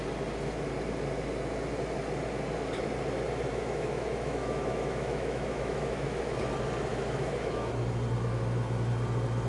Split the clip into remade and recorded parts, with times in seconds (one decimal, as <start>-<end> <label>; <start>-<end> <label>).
0.0-3.5 recorded; 3.5-6.4 remade; 6.4-6.9 recorded; 6.9-7.7 remade; 7.7-9.5 recorded